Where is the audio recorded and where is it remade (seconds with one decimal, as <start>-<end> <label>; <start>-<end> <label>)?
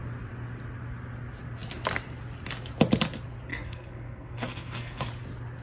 0.0-3.5 recorded; 3.5-5.1 remade; 5.1-5.6 recorded